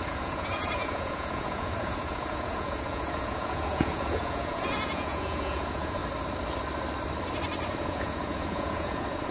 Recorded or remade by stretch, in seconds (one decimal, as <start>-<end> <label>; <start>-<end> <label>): 0.0-6.0 remade; 6.0-7.7 recorded; 7.7-9.3 remade